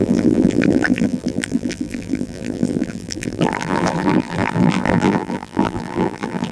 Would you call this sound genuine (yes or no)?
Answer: no